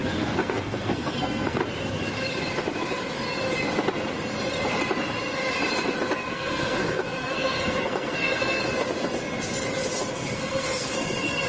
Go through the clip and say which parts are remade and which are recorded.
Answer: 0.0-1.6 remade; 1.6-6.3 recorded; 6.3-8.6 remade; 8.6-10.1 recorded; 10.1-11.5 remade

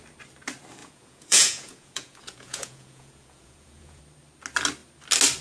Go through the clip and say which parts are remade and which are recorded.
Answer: 0.0-0.8 recorded; 0.8-4.0 remade; 4.0-5.4 recorded

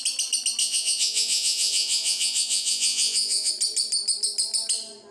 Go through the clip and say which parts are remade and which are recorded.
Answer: 0.0-0.6 recorded; 0.6-3.5 remade; 3.5-5.1 recorded

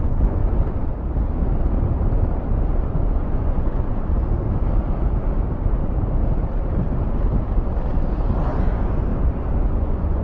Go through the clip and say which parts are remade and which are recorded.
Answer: 0.0-0.4 remade; 0.4-2.9 recorded; 2.9-4.2 remade; 4.2-8.6 recorded; 8.6-9.1 remade; 9.1-9.7 recorded; 9.7-10.2 remade

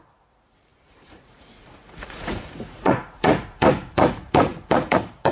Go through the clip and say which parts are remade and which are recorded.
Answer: 0.0-5.3 remade

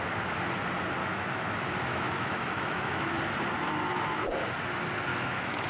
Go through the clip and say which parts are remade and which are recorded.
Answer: 0.0-1.0 recorded; 1.0-1.5 remade; 1.5-1.9 recorded; 1.9-3.1 remade; 3.1-5.1 recorded; 5.1-5.7 remade

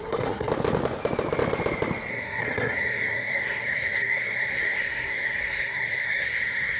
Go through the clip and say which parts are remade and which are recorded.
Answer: 0.0-0.5 remade; 0.5-2.1 recorded; 2.1-6.8 remade